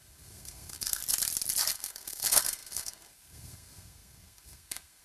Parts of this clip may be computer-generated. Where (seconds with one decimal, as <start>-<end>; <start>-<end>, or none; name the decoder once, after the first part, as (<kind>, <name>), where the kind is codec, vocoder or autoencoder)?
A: 0.0-1.0 (codec, SNAC); 1.7-5.0